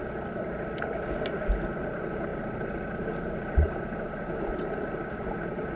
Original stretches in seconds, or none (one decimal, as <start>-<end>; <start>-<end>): 0.0-2.3